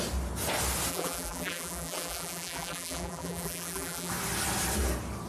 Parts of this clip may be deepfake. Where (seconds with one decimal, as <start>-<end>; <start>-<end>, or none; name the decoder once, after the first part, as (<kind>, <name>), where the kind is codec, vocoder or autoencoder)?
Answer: 0.9-4.1 (vocoder, BigVGAN v2)